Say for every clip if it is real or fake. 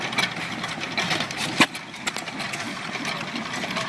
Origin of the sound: real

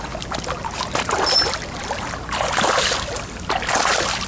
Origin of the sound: real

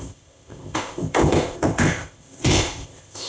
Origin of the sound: fake